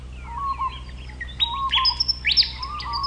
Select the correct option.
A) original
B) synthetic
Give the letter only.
A